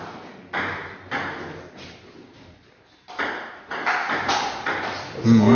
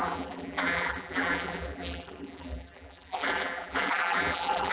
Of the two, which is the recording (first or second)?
first